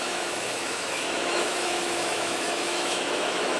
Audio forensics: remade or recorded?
remade